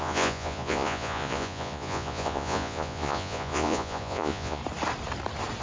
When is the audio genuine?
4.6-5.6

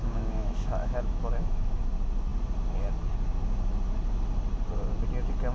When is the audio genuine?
1.8-5.5

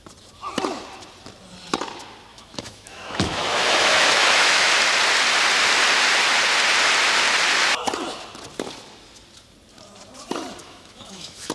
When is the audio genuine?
0.0-2.3; 4.7-10.6

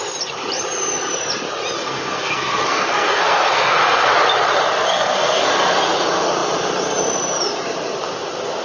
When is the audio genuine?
0.0-1.8; 4.1-4.9; 5.5-8.6